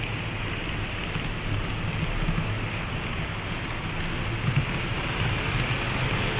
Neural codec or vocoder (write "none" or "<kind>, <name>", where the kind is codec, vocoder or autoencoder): none